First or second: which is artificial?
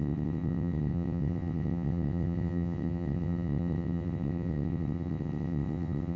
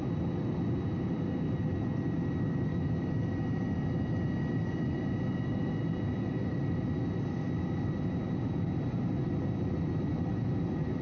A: first